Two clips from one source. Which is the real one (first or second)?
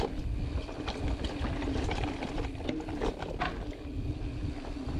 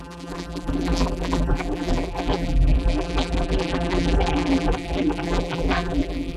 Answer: first